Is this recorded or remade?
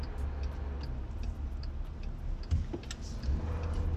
recorded